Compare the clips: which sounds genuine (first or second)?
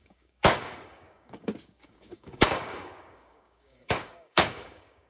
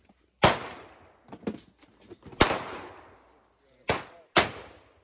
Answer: second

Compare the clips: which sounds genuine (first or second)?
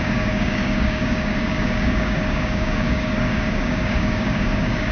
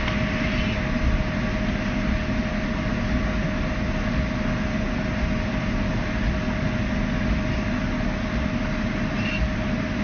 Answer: second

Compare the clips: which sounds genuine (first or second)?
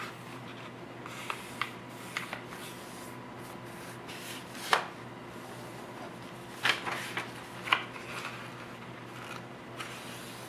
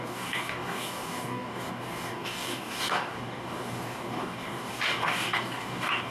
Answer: first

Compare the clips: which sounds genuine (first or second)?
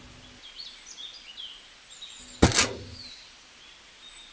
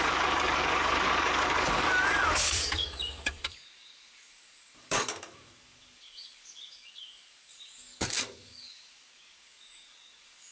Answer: first